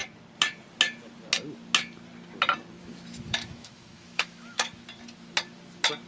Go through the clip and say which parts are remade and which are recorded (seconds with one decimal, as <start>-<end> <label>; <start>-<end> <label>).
0.0-2.8 recorded; 2.8-4.7 remade; 4.7-6.1 recorded